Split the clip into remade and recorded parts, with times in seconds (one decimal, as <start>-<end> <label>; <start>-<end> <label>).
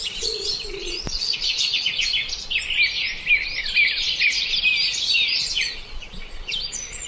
0.0-2.1 remade; 2.1-5.3 recorded; 5.3-7.1 remade